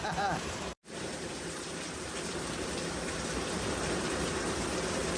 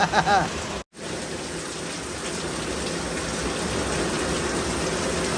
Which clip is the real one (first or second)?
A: second